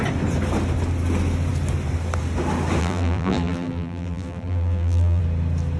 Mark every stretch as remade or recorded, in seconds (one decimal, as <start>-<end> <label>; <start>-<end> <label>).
0.0-2.8 recorded; 2.8-5.2 remade; 5.2-5.8 recorded

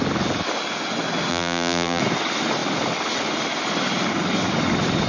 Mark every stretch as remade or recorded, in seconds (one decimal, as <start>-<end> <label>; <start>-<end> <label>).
0.0-1.3 recorded; 1.3-2.0 remade; 2.0-5.1 recorded

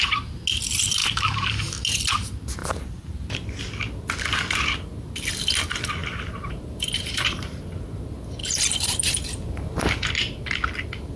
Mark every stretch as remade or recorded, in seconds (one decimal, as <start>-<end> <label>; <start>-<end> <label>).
0.0-1.0 recorded; 1.0-1.5 remade; 1.5-2.6 recorded; 2.6-3.6 remade; 3.6-6.0 recorded; 6.0-7.6 remade; 7.6-8.4 recorded; 8.4-10.1 remade; 10.1-11.2 recorded

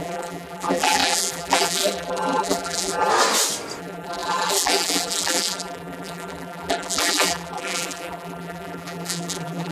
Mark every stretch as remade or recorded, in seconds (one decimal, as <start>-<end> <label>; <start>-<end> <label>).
0.0-3.1 remade; 3.1-3.8 recorded; 3.8-9.7 remade

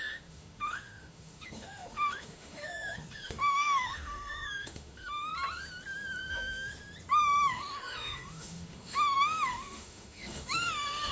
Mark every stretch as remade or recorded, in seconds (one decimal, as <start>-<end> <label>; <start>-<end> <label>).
0.0-5.3 remade; 5.3-6.3 recorded; 6.3-6.7 remade; 6.7-7.5 recorded; 7.5-11.1 remade